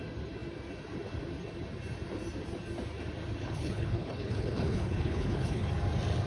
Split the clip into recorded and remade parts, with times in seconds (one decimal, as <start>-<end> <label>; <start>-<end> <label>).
0.0-3.4 recorded; 3.4-5.7 remade; 5.7-6.3 recorded